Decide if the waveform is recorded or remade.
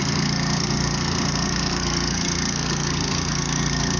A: remade